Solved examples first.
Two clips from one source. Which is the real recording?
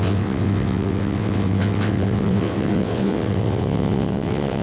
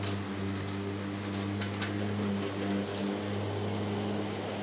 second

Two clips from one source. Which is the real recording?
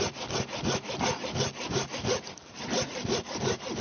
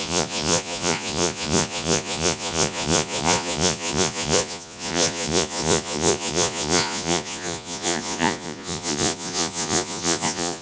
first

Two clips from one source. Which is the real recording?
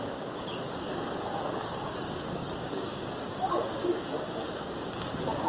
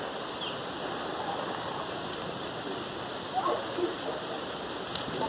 second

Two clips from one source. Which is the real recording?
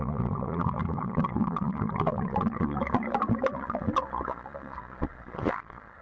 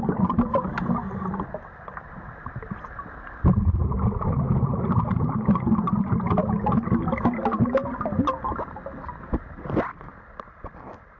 second